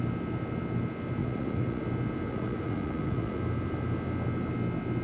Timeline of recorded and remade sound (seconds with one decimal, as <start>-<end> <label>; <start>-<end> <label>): 0.0-1.2 recorded; 1.2-1.8 remade; 1.8-2.3 recorded; 2.3-3.4 remade; 3.4-5.0 recorded